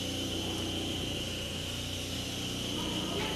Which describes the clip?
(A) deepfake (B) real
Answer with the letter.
B